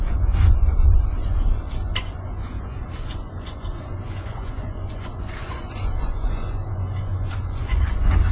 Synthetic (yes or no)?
yes